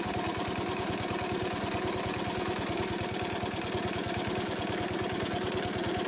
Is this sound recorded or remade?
recorded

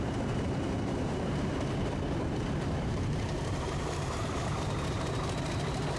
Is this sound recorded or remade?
remade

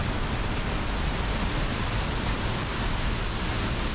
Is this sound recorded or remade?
recorded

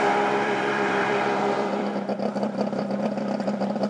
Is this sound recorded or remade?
remade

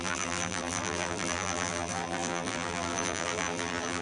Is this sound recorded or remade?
remade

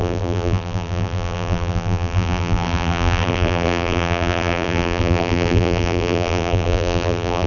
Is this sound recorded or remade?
remade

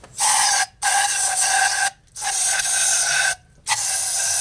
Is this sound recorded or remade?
recorded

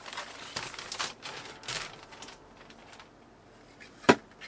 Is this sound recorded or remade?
remade